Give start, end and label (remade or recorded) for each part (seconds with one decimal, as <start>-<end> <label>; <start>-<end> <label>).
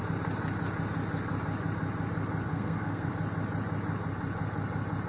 0.0-2.5 recorded; 2.5-3.1 remade; 3.1-5.1 recorded